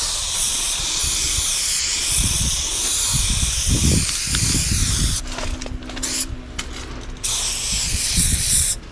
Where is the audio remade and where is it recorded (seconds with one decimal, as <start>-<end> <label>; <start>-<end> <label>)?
0.0-1.0 remade; 1.0-1.8 recorded; 1.8-2.7 remade; 2.7-7.9 recorded; 7.9-8.9 remade